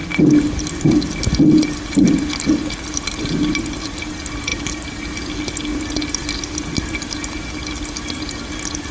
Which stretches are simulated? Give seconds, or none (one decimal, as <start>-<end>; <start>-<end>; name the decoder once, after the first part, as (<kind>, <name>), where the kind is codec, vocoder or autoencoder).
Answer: 4.5-5.0 (vocoder, BigVGAN v2)